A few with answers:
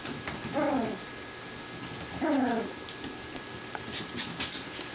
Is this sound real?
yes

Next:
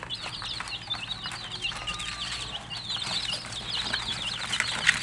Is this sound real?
yes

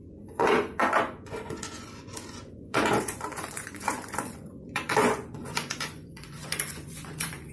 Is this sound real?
no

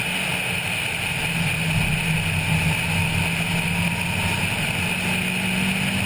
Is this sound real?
yes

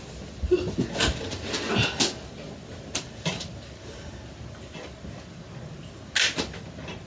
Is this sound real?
yes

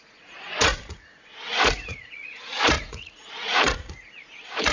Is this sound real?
no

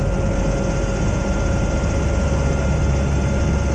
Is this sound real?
yes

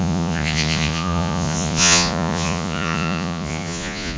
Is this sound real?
no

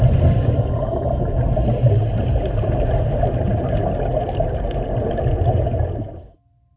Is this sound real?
yes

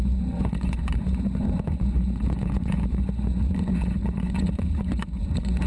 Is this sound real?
no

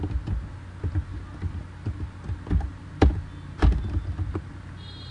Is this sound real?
yes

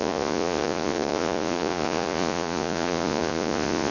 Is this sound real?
no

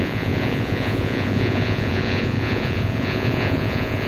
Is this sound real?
no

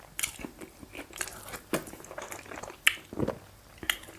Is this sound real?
yes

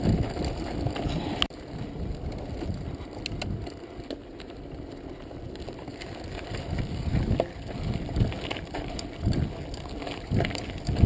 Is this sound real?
yes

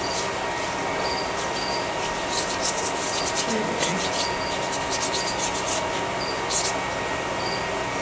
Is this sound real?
yes